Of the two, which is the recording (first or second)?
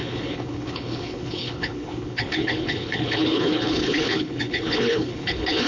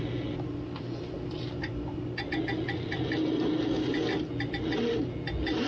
second